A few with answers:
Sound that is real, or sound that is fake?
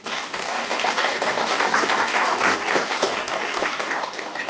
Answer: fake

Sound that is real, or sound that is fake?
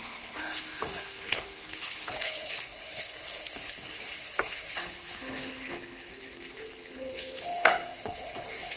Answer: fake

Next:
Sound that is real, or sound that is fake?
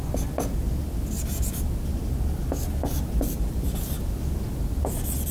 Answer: real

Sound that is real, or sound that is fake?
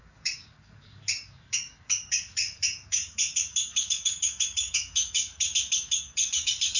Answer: fake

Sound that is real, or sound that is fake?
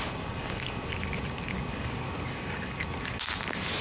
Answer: real